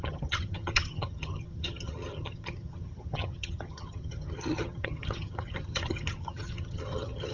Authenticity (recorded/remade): remade